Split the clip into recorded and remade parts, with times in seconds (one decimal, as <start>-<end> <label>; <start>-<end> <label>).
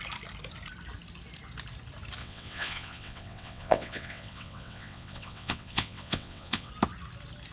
0.0-2.2 recorded; 2.2-6.7 remade; 6.7-7.5 recorded